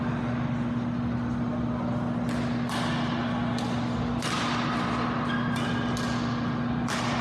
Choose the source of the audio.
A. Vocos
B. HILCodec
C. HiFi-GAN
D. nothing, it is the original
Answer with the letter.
D